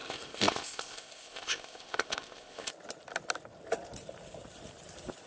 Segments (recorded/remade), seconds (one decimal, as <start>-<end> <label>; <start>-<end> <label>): 0.0-2.7 remade; 2.7-5.3 recorded